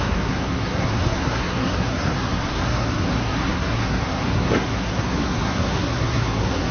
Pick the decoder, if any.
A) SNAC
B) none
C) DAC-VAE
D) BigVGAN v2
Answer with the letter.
A